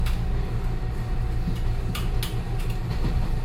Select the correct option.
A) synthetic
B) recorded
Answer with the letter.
B